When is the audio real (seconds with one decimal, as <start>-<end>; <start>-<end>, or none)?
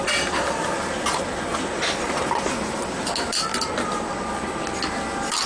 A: 0.0-5.5